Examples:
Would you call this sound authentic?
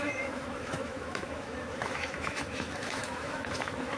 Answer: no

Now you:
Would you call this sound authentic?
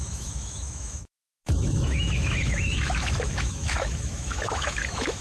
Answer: no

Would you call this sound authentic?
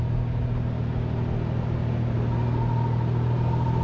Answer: yes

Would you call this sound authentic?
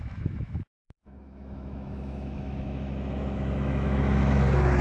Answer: no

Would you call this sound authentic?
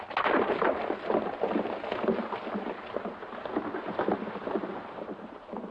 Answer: yes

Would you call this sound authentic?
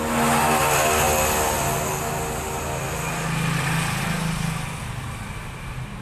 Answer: yes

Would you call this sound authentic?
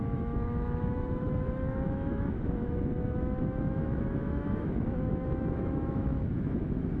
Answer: no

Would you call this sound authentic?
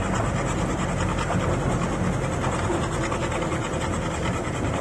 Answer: yes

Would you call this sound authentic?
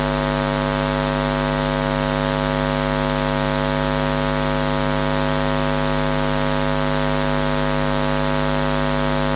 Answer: yes